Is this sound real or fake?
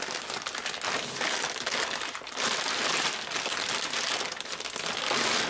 real